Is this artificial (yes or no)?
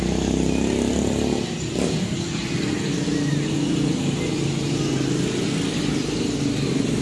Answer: no